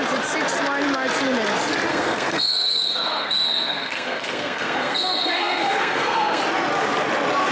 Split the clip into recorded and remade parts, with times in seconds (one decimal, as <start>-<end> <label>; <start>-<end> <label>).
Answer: 0.0-1.9 recorded; 1.9-6.4 remade; 6.4-7.5 recorded